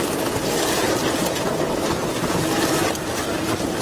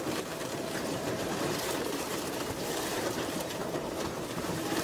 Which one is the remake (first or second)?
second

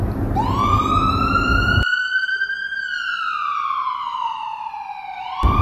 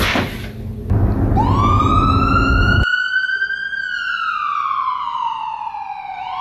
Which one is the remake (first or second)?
first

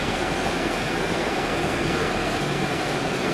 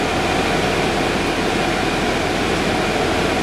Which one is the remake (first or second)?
first